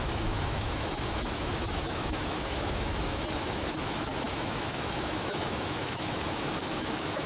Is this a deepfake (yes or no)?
yes